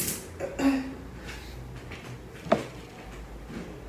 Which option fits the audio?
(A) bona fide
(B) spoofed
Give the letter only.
A